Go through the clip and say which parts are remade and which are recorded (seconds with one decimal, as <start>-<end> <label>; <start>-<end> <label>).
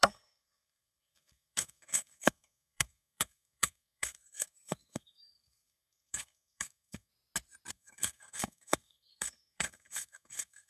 0.0-7.1 remade; 7.1-7.7 recorded; 7.7-10.7 remade